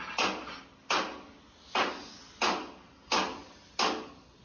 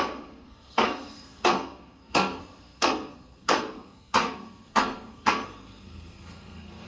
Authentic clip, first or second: first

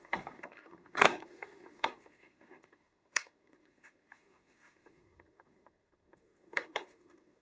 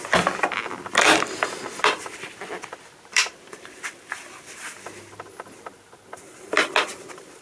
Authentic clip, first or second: second